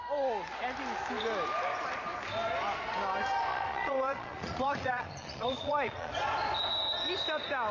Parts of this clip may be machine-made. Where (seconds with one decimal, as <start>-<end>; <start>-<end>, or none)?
3.5-6.1